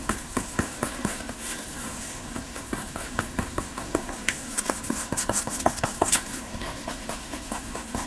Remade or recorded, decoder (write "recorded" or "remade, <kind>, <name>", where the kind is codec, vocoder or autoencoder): remade, codec, SNAC